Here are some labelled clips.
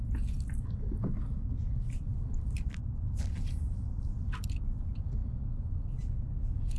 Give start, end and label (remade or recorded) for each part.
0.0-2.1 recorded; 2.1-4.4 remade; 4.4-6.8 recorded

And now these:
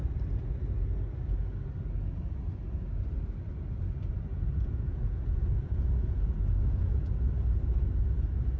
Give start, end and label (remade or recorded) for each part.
0.0-4.3 recorded; 4.3-7.1 remade; 7.1-8.6 recorded

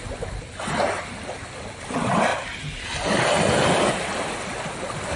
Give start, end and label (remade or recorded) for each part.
0.0-5.2 recorded

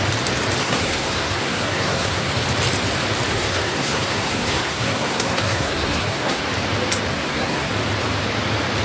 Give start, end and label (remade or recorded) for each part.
0.0-0.6 recorded; 0.6-2.3 remade; 2.3-3.3 recorded; 3.3-6.4 remade; 6.4-7.1 recorded; 7.1-7.7 remade; 7.7-8.8 recorded

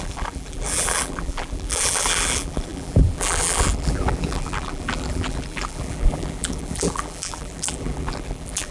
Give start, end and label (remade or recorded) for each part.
0.0-8.7 remade

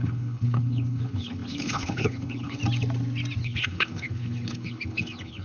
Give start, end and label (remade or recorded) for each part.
0.0-2.6 remade; 2.6-3.4 recorded; 3.4-5.4 remade

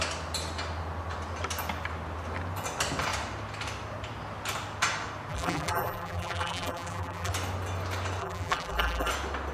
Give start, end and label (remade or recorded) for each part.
0.0-5.3 recorded; 5.3-7.3 remade; 7.3-8.2 recorded; 8.2-9.1 remade; 9.1-9.5 recorded